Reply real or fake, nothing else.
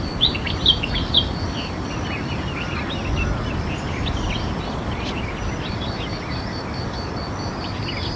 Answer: fake